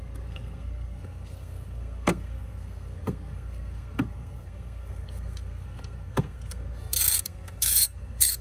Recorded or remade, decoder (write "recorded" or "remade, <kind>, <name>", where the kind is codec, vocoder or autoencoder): remade, codec, SNAC